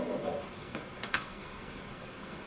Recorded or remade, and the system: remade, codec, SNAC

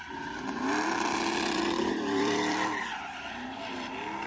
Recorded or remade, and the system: remade, vocoder, BigVGAN v2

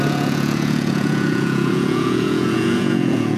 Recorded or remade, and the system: remade, vocoder, Vocos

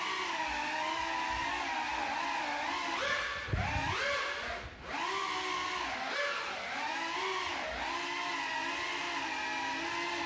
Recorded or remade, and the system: recorded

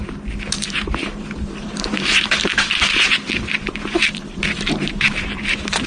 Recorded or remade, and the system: remade, vocoder, BigVGAN v2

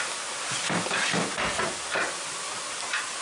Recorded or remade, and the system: recorded